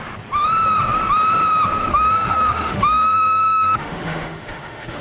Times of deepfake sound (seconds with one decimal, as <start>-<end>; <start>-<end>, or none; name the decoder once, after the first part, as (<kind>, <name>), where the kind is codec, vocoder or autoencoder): 1.9-5.0 (autoencoder, DAC-VAE)